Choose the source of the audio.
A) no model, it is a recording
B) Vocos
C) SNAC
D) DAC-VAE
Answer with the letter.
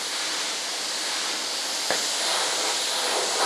A